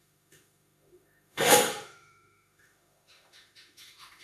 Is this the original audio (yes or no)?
no